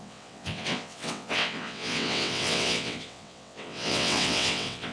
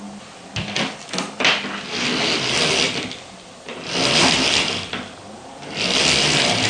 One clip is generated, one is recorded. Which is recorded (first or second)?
second